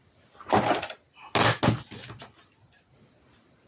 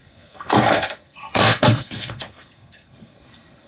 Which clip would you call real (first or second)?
first